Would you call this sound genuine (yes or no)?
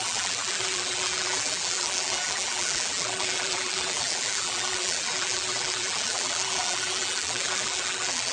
no